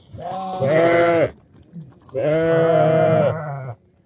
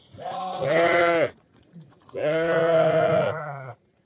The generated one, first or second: second